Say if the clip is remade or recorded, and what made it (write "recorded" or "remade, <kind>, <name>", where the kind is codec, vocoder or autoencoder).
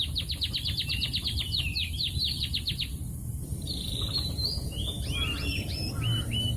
remade, vocoder, BigVGAN v2